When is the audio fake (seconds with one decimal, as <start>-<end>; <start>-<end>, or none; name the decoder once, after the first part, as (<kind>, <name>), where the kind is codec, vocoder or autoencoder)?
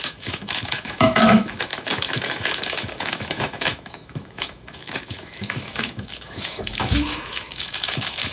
0.0-8.3 (autoencoder, DAC-VAE)